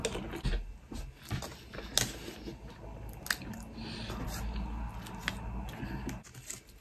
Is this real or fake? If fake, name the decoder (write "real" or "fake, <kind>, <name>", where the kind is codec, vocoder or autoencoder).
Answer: real